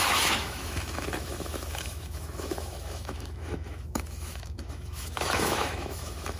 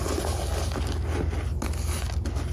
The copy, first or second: first